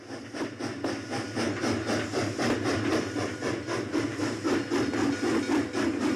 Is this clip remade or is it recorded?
recorded